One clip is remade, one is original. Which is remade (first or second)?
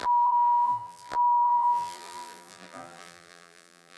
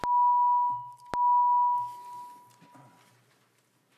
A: first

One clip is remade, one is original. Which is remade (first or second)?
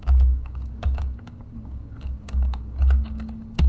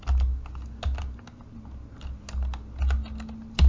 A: first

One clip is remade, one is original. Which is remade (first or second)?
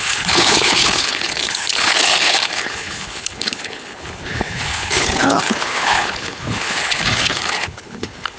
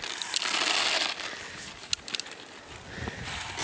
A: first